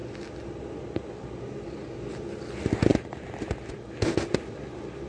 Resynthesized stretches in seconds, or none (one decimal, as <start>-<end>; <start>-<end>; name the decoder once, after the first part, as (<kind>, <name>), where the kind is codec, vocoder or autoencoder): none